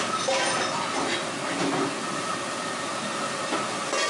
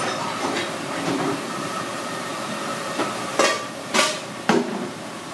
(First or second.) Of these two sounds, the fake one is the second